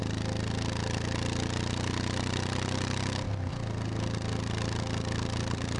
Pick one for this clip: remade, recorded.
recorded